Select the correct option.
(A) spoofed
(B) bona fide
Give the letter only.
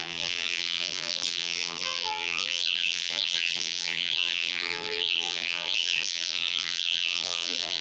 A